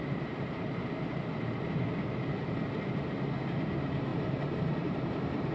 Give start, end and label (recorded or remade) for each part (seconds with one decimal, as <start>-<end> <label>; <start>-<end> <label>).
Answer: 0.0-4.1 recorded; 4.1-5.0 remade; 5.0-5.5 recorded